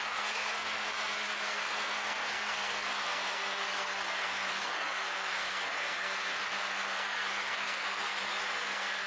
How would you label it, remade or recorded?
remade